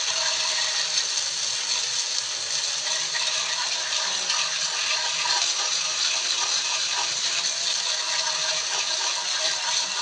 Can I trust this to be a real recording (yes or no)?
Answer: yes